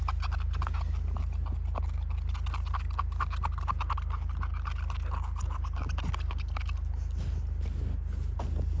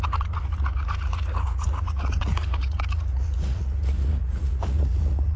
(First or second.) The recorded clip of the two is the first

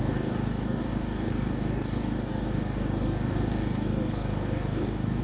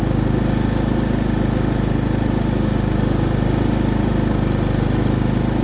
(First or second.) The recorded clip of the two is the second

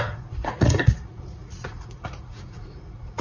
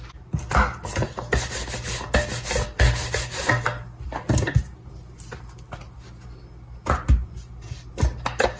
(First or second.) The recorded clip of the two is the second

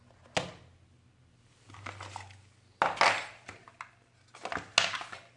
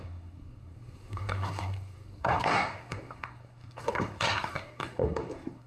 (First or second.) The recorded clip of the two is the first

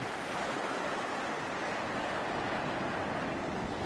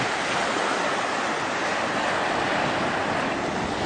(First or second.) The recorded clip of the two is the first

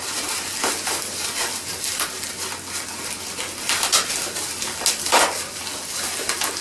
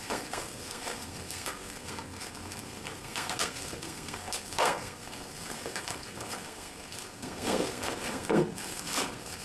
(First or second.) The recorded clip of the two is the first